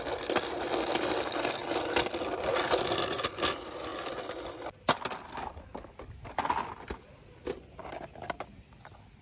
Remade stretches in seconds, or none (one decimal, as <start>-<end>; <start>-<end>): none